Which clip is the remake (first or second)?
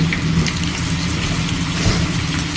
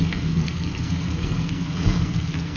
second